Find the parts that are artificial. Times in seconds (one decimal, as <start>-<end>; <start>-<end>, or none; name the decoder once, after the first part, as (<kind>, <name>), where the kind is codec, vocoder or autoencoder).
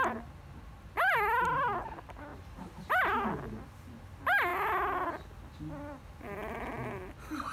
2.3-2.8 (vocoder, BigVGAN v2)